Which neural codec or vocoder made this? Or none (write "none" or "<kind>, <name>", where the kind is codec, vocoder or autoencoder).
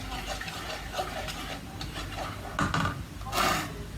none